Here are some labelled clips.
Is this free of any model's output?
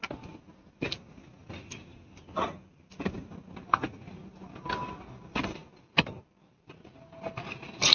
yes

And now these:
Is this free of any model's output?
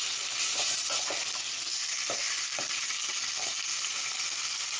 yes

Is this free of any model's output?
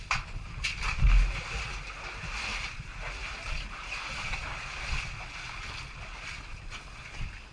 yes